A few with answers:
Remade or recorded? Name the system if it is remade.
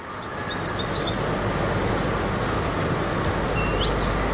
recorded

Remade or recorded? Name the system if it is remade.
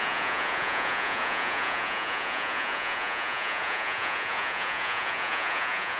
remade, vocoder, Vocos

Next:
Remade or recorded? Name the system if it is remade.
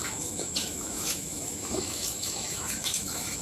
remade, autoencoder, DAC-VAE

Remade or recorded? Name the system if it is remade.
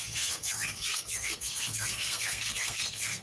remade, codec, SNAC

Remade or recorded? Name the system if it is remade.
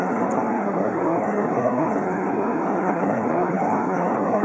remade, codec, SNAC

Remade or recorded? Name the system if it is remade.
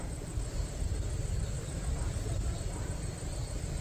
recorded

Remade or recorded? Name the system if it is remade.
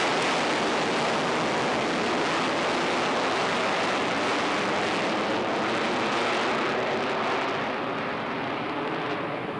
recorded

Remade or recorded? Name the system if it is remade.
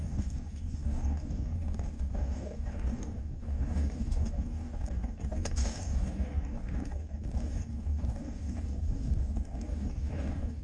remade, codec, DAC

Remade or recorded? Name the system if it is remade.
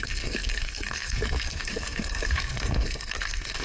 remade, codec, SNAC